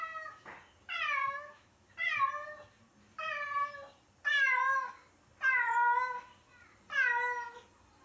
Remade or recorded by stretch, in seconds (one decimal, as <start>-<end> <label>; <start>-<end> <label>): 0.0-1.2 recorded; 1.2-1.9 remade; 1.9-8.0 recorded